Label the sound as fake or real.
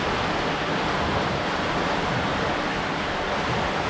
real